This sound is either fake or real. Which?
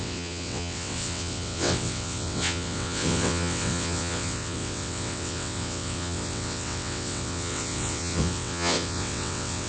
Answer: fake